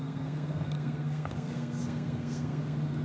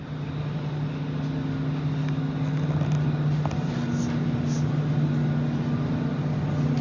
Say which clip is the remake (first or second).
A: first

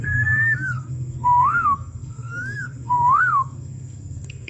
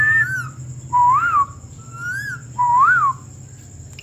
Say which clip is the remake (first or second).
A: first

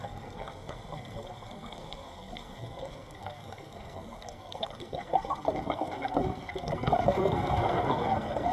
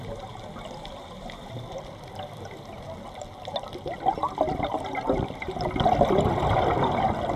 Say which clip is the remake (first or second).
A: first